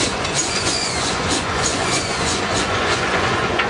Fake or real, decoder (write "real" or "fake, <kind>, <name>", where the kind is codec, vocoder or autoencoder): fake, vocoder, Vocos